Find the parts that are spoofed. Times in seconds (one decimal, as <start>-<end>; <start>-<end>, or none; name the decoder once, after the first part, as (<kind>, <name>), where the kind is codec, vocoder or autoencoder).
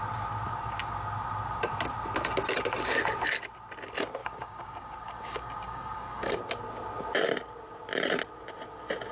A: 4.2-6.4 (codec, DAC)